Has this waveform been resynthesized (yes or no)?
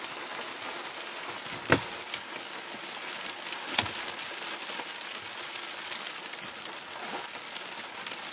no